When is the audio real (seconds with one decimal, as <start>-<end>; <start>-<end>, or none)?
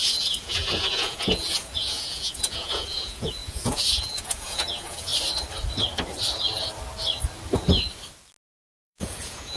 5.1-8.8